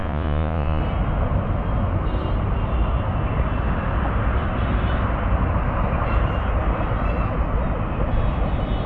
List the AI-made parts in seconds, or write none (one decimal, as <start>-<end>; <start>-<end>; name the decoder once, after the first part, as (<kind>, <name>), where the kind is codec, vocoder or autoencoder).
0.0-0.8 (vocoder, Vocos)